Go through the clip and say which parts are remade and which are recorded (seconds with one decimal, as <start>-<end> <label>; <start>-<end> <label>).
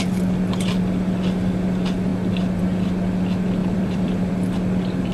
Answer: 0.0-3.6 recorded; 3.6-4.3 remade; 4.3-5.1 recorded